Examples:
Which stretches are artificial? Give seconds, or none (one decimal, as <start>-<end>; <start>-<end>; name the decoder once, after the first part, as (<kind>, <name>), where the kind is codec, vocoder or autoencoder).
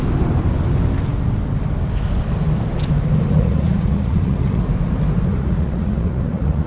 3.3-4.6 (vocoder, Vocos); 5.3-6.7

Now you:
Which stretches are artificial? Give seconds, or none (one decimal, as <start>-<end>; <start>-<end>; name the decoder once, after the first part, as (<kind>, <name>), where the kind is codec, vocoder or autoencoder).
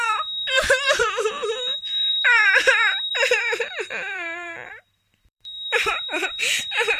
0.0-7.0 (vocoder, BigVGAN v2)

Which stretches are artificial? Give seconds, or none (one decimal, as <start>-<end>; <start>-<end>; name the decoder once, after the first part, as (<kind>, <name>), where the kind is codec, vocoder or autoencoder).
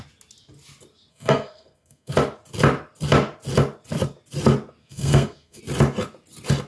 1.1-2.1 (codec, SNAC); 4.8-5.6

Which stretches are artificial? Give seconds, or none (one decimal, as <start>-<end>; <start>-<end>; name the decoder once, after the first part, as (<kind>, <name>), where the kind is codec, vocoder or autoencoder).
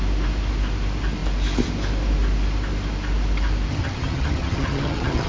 3.7-5.3 (vocoder, HiFi-GAN)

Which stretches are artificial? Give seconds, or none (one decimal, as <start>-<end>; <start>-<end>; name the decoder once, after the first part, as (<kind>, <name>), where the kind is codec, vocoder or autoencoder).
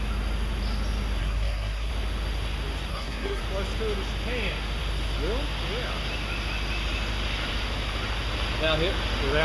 1.2-1.9 (codec, SNAC); 2.9-3.4